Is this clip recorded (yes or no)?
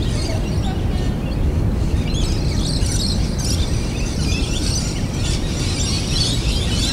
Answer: yes